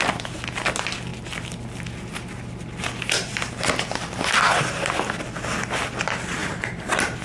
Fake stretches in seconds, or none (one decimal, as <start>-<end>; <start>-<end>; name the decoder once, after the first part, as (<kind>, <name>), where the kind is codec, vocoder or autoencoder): 6.4-7.2 (vocoder, BigVGAN v2)